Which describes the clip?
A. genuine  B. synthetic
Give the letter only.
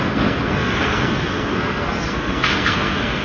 B